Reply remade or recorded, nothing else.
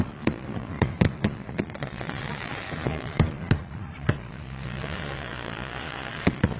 remade